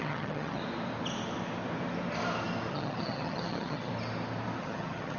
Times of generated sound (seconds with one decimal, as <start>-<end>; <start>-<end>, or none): 0.0-0.6; 2.7-3.9; 4.6-5.2